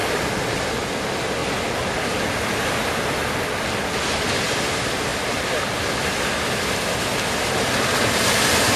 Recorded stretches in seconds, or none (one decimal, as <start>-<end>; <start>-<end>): 0.0-8.8